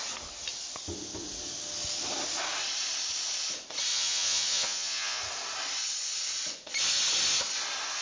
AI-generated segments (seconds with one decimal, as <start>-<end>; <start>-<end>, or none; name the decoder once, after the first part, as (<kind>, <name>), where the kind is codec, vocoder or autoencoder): 3.9-5.2 (vocoder, Vocos)